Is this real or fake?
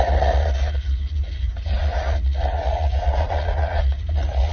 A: fake